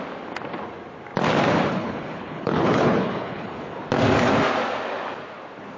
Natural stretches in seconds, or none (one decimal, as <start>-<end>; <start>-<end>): 0.0-1.7; 3.8-5.8